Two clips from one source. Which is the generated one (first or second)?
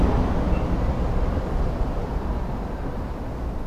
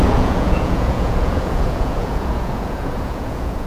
second